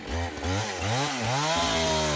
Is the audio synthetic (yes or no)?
no